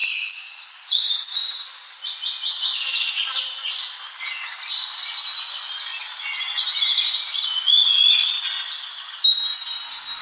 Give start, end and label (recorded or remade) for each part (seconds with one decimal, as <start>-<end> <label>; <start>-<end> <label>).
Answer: 0.0-1.7 remade; 1.7-6.9 recorded; 6.9-8.3 remade; 8.3-10.2 recorded